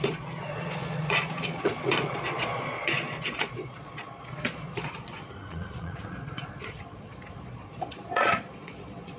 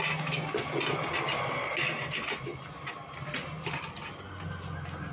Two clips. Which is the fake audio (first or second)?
first